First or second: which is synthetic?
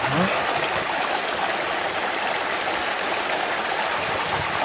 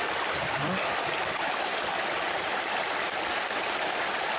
second